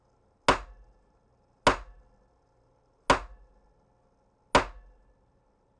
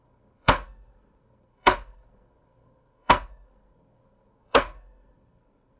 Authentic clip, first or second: first